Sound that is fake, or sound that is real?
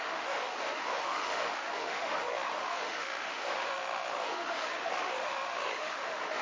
fake